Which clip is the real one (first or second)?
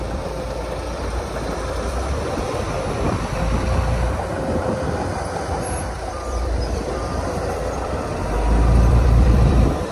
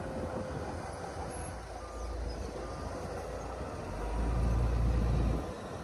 second